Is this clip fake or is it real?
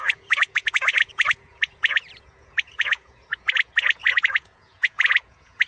fake